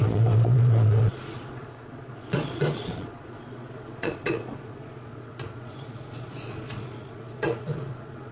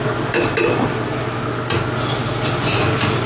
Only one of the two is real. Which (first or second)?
second